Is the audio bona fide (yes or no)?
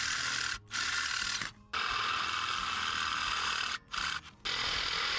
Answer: yes